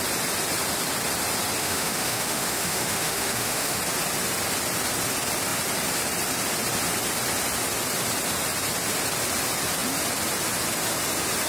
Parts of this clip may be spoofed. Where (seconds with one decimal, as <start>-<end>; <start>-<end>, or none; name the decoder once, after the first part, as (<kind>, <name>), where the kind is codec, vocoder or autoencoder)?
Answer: 1.6-3.8 (autoencoder, DAC-VAE)